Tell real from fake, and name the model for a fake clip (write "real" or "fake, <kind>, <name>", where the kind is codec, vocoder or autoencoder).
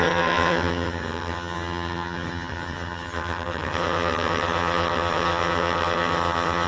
fake, vocoder, HiFi-GAN